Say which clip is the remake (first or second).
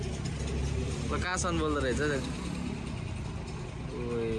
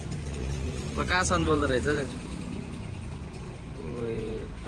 second